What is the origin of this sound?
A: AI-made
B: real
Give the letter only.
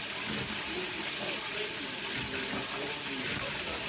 B